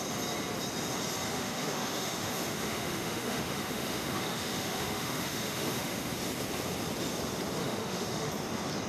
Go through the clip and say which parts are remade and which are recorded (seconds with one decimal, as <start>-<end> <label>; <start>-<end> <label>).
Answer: 0.0-1.3 recorded; 1.3-6.1 remade; 6.1-7.6 recorded; 7.6-8.3 remade; 8.3-8.9 recorded